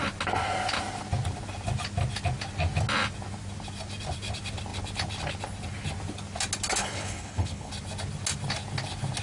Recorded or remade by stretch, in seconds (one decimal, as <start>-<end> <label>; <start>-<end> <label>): 0.0-6.8 recorded; 6.8-7.7 remade; 7.7-9.2 recorded